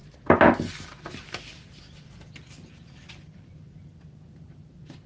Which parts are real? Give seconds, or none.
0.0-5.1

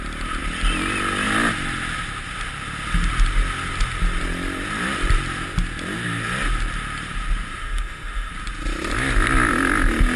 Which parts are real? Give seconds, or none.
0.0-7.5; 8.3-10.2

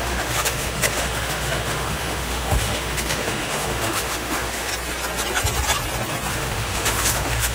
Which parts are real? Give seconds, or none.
4.7-6.3

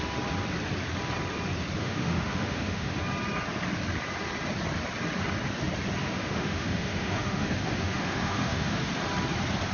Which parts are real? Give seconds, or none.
0.0-1.8; 2.9-6.0; 8.9-9.7

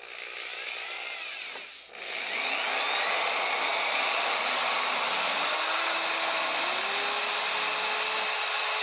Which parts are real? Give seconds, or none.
0.0-8.8

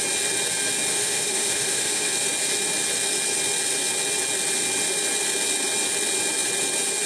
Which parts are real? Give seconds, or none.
0.0-0.9; 2.1-7.1

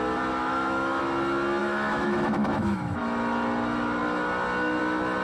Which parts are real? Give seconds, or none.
0.0-0.4; 1.0-1.6; 3.0-5.2